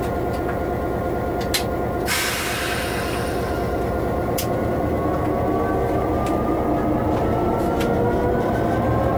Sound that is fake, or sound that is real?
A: real